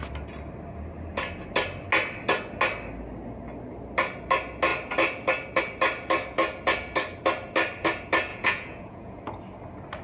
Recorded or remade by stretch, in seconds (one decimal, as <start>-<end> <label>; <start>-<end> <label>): 0.0-8.3 recorded; 8.3-9.2 remade; 9.2-10.0 recorded